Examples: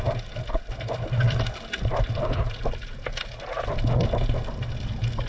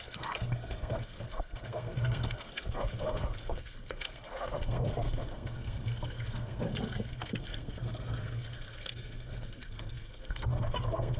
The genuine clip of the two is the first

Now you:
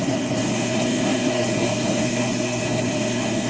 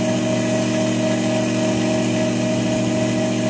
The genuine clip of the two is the second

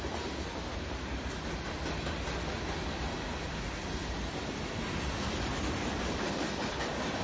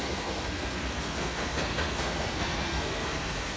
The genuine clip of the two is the first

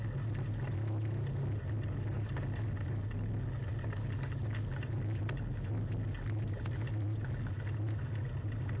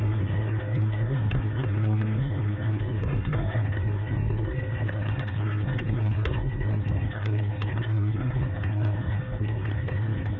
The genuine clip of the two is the first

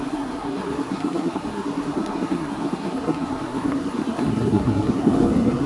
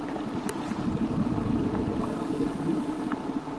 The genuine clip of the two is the second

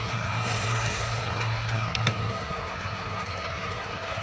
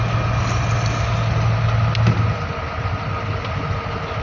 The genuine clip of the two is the second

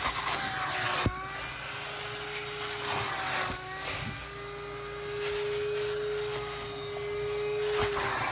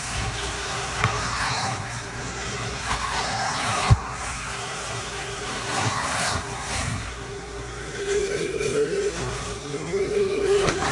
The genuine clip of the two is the first